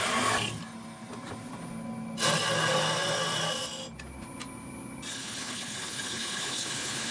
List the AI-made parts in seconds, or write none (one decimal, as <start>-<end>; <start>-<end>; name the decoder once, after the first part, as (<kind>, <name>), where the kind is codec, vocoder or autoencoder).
5.1-7.1 (codec, HILCodec)